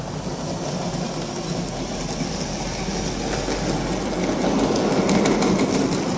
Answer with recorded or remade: recorded